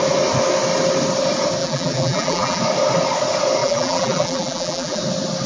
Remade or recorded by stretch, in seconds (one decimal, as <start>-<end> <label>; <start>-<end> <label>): 0.0-1.6 recorded; 1.6-2.6 remade; 2.6-3.6 recorded; 3.6-5.0 remade; 5.0-5.5 recorded